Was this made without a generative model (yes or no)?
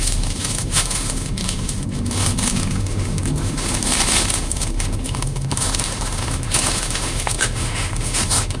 no